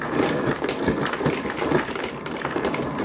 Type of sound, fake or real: fake